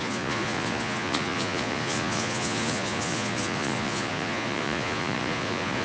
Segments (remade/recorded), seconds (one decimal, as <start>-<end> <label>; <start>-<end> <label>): 0.0-5.8 remade